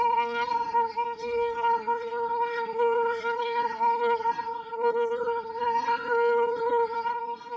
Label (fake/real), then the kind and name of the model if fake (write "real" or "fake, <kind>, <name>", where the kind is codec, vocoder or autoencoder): fake, codec, SNAC